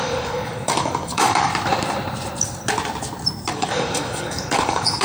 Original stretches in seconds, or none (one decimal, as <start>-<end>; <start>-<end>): 1.5-3.5